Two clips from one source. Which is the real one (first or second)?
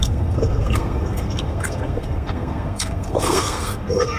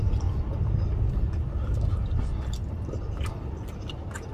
second